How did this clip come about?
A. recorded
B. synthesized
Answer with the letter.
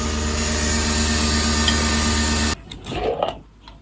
A